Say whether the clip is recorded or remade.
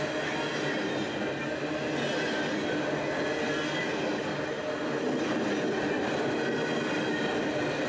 recorded